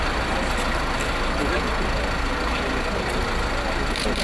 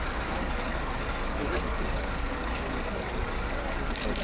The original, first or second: first